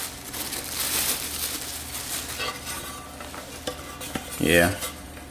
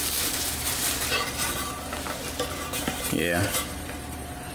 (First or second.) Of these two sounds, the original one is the first